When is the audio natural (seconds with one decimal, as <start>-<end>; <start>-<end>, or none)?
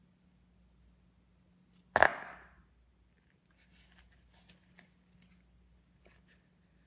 0.0-6.9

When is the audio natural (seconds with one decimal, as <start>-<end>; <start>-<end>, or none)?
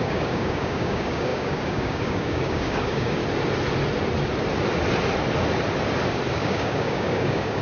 3.2-6.3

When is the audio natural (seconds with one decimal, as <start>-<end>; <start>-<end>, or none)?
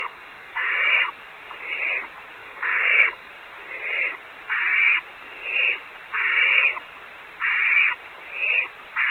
0.7-2.4; 3.3-9.1